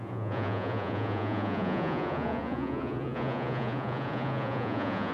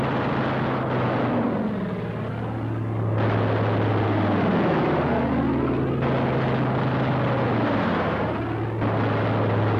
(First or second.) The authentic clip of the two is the second